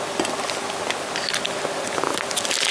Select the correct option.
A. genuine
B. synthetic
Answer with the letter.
A